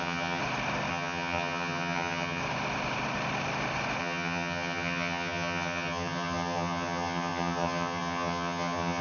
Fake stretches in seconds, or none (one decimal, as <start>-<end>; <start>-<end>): 0.0-0.4; 0.9-2.4; 4.0-9.0